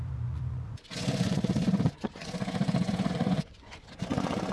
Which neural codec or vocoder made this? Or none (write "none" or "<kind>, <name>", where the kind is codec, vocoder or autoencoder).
vocoder, Vocos